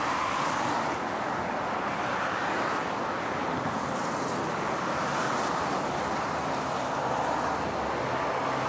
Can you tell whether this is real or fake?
real